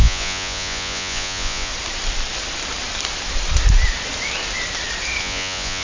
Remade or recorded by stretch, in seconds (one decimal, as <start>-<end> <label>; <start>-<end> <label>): 0.0-1.7 remade; 1.7-5.2 recorded; 5.2-5.8 remade